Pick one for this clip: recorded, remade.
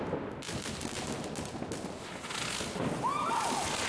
recorded